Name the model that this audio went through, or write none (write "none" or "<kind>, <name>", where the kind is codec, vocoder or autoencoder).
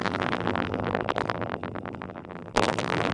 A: vocoder, BigVGAN v2